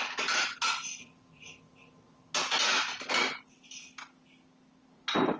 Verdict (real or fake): real